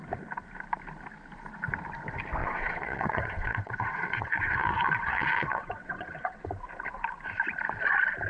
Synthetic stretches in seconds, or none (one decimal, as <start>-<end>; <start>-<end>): 2.4-6.5